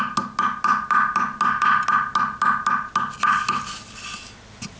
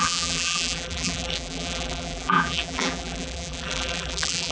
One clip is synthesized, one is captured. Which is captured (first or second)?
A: first